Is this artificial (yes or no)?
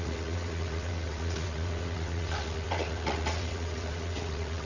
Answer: yes